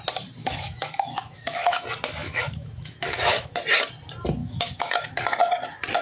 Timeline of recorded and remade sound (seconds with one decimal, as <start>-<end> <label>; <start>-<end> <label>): 0.0-0.4 recorded; 0.4-1.8 remade; 1.8-2.2 recorded; 2.2-3.6 remade; 3.6-4.4 recorded; 4.4-5.2 remade; 5.2-6.0 recorded